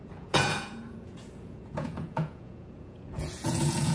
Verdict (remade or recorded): remade